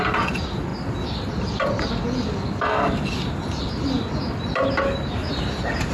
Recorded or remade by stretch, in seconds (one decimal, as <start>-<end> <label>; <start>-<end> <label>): 0.0-5.2 recorded; 5.2-5.9 remade